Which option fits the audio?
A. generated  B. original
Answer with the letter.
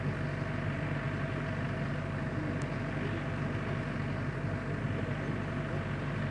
B